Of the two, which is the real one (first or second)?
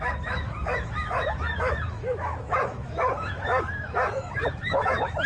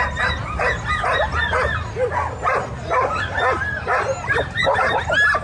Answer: second